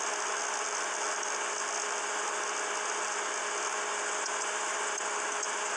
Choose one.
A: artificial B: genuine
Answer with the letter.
B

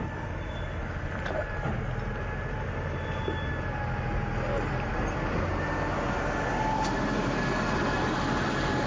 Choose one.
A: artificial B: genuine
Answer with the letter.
B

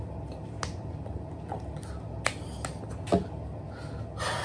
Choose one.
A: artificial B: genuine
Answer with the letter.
B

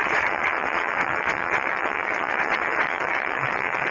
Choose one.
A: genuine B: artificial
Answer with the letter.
B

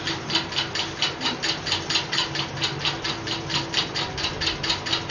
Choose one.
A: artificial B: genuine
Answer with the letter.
B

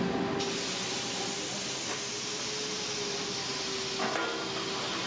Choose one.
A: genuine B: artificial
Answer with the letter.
A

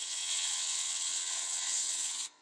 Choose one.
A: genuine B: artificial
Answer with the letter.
B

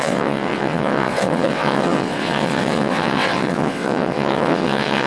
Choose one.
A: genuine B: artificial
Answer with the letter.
B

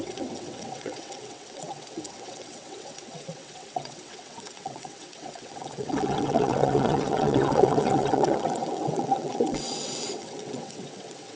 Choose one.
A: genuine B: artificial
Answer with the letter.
B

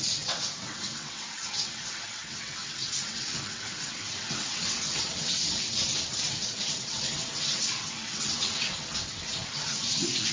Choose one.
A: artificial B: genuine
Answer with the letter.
A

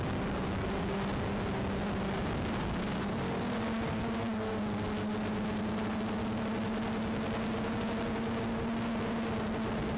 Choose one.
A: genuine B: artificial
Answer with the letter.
A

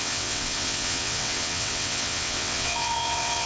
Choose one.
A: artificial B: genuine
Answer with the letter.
A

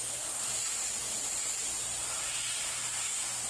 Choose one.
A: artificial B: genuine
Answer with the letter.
B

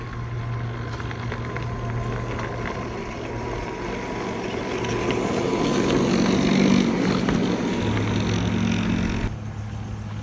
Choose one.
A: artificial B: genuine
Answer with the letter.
B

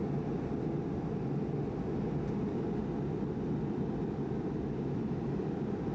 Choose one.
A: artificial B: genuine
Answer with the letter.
B